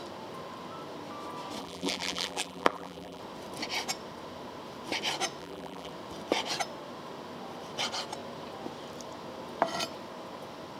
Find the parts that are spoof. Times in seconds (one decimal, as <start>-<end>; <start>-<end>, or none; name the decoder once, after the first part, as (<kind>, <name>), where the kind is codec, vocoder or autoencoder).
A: 1.6-3.2 (vocoder, BigVGAN v2); 5.4-5.9